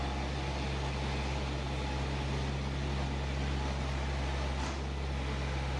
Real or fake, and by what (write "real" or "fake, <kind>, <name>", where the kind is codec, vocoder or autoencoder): real